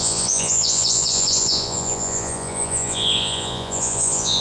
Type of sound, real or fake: fake